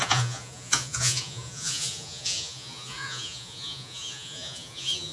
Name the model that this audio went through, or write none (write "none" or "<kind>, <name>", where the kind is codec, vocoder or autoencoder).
vocoder, Vocos